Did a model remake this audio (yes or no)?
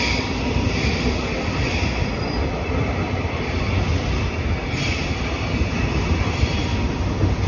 no